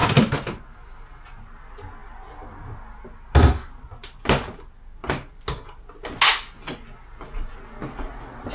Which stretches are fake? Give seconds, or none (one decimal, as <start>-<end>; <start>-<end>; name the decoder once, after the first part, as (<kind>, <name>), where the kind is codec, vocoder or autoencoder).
none